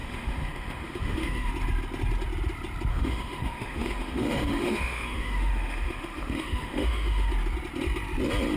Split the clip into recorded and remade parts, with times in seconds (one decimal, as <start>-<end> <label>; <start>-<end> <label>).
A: 0.0-1.5 remade; 1.5-2.9 recorded; 2.9-7.3 remade; 7.3-8.6 recorded